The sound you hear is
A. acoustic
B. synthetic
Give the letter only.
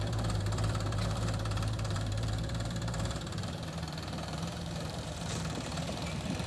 B